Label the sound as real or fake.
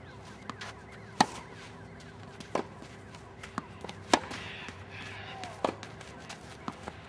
real